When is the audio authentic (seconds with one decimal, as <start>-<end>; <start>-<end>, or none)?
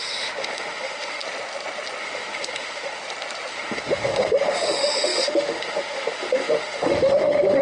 1.2-2.0; 3.0-3.5